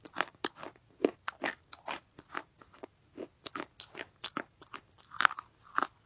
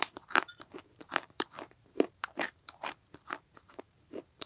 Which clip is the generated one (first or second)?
second